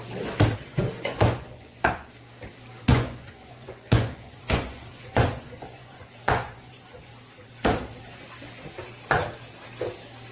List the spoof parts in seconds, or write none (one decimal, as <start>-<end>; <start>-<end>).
0.7-2.1; 2.9-7.1